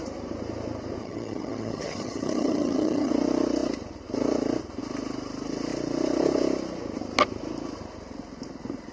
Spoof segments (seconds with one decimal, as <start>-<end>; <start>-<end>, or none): 1.0-3.1